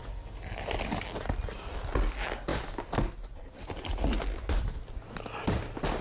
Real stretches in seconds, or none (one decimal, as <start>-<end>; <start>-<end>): 0.0-6.0

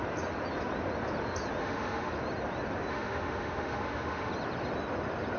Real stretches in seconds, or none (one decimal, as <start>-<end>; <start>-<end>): 0.0-1.6; 2.1-2.9; 4.3-5.4

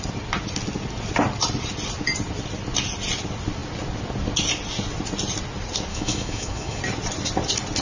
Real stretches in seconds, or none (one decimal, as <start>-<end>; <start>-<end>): 0.0-5.9; 6.8-7.8